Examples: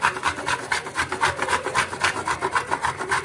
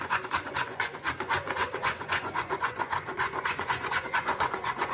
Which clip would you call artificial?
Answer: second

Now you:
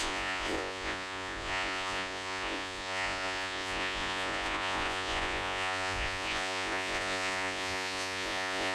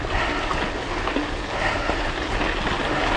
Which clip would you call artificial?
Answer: first